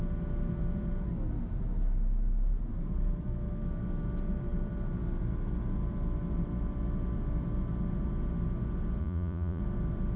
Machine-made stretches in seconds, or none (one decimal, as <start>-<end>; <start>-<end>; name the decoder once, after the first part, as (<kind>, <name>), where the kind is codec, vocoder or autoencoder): 9.0-9.6 (vocoder, Vocos)